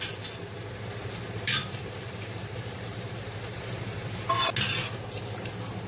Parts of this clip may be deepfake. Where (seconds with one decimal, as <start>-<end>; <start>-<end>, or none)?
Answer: 1.0-4.5